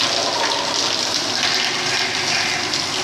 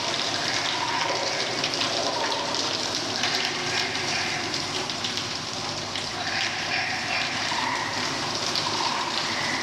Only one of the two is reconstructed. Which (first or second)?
second